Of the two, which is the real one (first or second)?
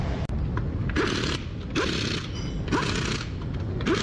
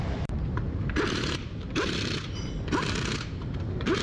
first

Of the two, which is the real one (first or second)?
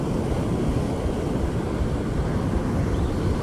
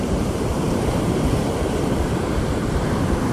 first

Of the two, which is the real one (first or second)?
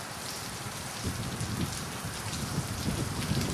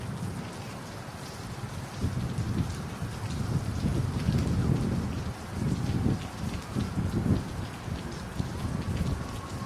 second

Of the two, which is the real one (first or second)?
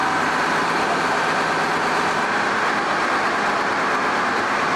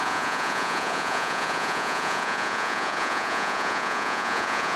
first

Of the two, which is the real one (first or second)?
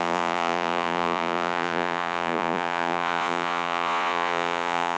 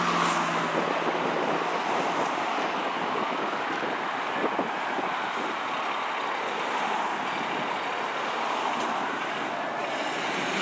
second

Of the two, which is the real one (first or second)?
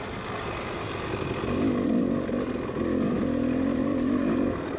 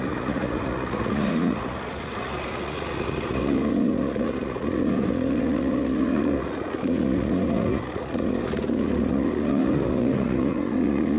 first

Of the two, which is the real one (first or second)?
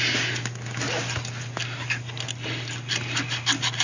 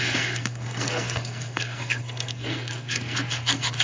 first